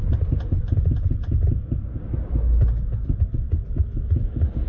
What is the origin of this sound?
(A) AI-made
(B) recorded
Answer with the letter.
B